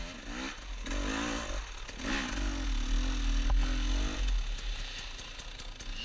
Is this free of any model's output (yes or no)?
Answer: yes